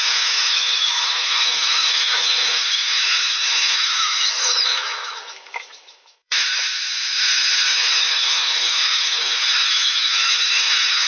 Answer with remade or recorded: remade